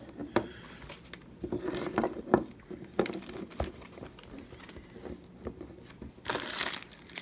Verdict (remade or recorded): recorded